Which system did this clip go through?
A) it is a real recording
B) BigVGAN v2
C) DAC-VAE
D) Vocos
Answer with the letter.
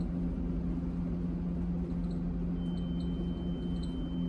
A